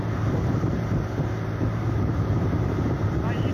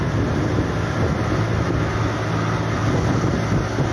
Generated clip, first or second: first